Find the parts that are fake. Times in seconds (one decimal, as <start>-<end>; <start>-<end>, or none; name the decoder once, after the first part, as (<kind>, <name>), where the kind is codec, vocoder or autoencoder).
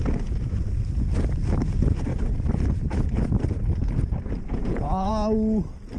4.6-5.1 (vocoder, Vocos)